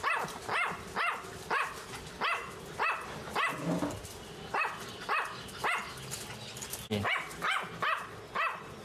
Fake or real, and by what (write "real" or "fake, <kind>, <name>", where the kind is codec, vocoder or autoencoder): real